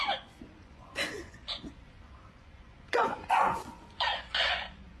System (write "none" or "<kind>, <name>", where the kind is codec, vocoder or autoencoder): vocoder, Vocos